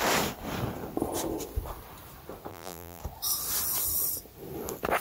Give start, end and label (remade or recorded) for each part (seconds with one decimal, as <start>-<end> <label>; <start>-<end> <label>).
0.0-2.5 recorded; 2.5-3.0 remade; 3.0-5.0 recorded